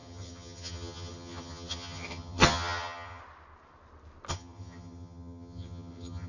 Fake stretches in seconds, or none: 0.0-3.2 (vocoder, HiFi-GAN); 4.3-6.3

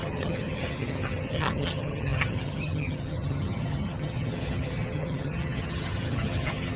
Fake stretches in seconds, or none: 0.0-6.8 (vocoder, HiFi-GAN)

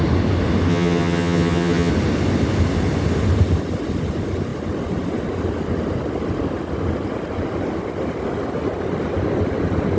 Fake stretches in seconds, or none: 0.7-1.9 (vocoder, HiFi-GAN)

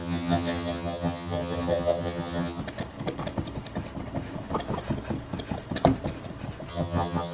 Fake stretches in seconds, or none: 0.0-2.6 (vocoder, HiFi-GAN); 6.7-7.3